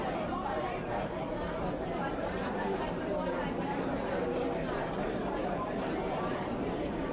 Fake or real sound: fake